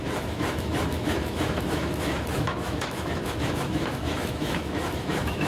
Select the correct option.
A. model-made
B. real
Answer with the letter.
A